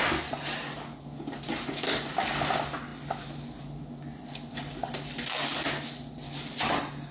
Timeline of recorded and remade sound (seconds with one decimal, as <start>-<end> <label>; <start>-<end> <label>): 0.0-7.1 recorded